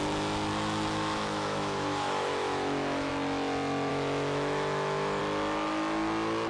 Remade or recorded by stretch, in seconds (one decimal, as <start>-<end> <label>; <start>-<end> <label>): 0.0-0.5 recorded; 0.5-3.1 remade; 3.1-3.9 recorded; 3.9-5.2 remade; 5.2-6.5 recorded